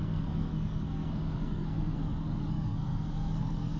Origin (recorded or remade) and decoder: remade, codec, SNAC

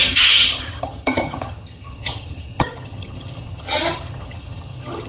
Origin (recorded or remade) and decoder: remade, vocoder, HiFi-GAN